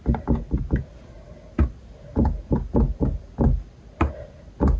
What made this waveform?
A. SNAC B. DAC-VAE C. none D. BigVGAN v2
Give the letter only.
C